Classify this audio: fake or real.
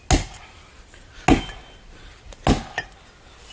real